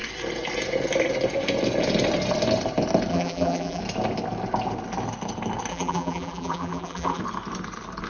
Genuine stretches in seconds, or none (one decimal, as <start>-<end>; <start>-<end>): 0.0-3.1; 3.8-5.7; 7.2-8.1